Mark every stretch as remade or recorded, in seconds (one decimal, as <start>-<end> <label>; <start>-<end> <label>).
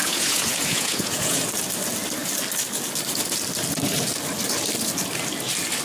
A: 0.0-1.4 remade; 1.4-5.8 recorded